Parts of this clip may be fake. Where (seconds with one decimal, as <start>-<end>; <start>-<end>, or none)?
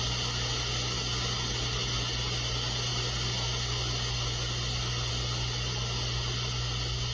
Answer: none